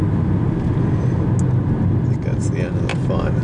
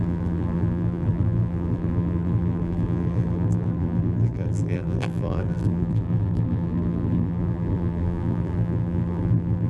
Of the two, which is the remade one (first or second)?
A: second